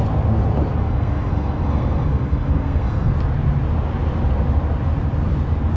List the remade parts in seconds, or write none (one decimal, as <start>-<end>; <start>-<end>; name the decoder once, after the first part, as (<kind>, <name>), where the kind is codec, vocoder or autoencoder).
0.8-3.1 (codec, SNAC)